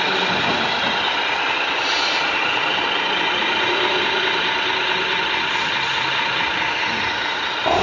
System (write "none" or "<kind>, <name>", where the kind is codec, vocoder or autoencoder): none